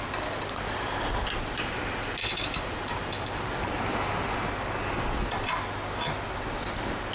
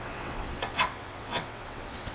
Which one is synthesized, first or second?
second